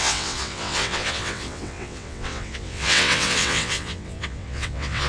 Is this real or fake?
fake